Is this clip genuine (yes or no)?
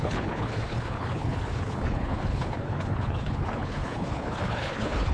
no